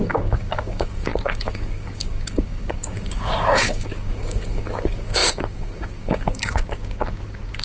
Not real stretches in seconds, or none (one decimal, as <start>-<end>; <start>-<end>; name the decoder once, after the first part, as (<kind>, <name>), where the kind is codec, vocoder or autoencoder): 0.0-7.6 (codec, DAC)